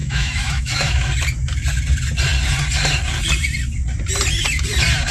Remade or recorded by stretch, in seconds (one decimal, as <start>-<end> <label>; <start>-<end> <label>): 0.0-1.1 remade; 1.1-5.1 recorded